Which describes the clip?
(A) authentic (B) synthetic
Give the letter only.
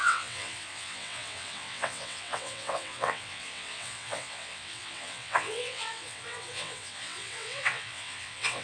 B